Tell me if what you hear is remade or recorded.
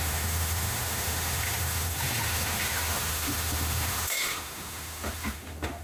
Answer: remade